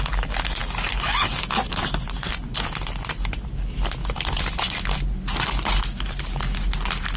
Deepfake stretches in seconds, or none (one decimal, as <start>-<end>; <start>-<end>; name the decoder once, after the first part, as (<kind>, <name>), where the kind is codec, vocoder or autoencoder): 4.0-4.6 (vocoder, BigVGAN v2)